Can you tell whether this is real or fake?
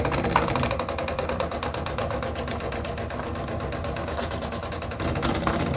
real